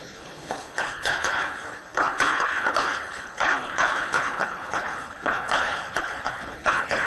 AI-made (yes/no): yes